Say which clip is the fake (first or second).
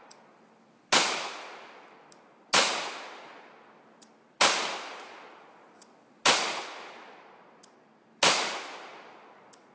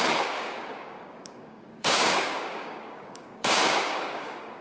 second